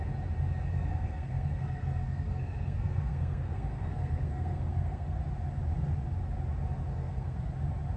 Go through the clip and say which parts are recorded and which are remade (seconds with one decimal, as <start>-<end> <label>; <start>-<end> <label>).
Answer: 0.0-0.7 recorded; 0.7-5.2 remade; 5.2-6.9 recorded; 6.9-7.5 remade; 7.5-8.0 recorded